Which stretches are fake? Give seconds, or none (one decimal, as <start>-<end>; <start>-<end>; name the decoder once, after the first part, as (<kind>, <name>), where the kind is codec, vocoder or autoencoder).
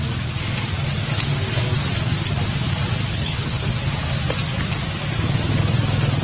3.1-3.7 (codec, HILCodec)